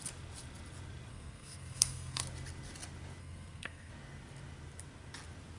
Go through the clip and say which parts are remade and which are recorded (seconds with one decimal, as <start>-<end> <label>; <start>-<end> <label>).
0.0-1.1 recorded; 1.1-2.2 remade; 2.2-3.2 recorded; 3.2-3.9 remade; 3.9-5.6 recorded